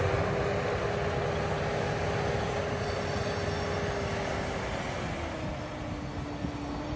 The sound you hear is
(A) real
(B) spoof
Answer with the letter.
A